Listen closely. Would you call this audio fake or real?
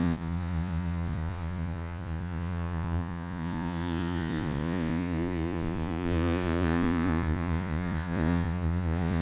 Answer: fake